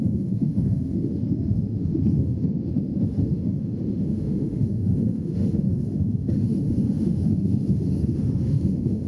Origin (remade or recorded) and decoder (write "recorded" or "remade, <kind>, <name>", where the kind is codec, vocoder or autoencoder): remade, autoencoder, DAC-VAE